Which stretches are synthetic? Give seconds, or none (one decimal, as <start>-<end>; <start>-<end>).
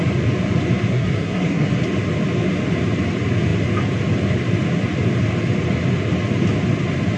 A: 0.9-1.7